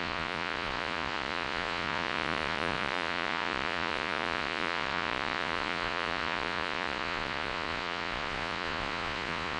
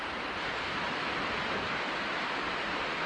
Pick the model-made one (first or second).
first